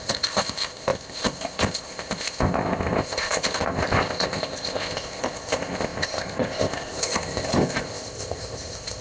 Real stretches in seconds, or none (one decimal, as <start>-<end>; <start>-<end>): none